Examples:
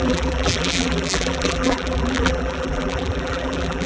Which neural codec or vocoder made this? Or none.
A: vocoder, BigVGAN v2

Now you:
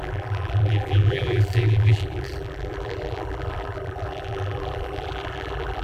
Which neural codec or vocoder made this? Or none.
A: vocoder, BigVGAN v2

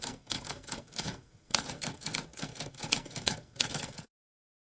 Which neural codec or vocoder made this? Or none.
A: codec, SNAC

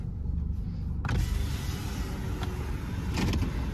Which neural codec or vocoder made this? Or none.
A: none